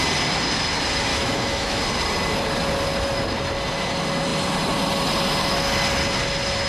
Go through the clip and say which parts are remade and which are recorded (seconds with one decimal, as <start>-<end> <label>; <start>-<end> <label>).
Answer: 0.0-1.1 recorded; 1.1-1.8 remade; 1.8-6.7 recorded